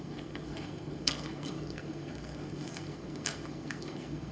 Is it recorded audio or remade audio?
remade